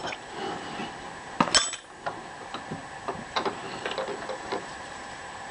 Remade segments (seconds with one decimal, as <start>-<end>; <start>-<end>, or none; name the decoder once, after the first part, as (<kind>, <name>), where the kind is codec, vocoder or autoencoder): 0.0-0.8 (vocoder, BigVGAN v2); 3.3-5.5